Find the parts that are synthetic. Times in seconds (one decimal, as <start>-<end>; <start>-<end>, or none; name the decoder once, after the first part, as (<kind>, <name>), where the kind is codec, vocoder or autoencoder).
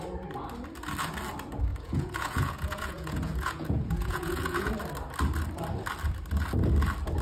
1.7-4.7 (vocoder, Vocos)